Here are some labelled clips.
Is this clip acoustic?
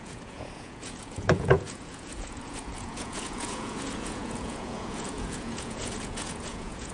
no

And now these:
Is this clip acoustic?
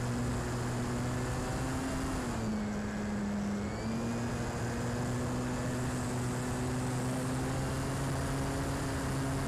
yes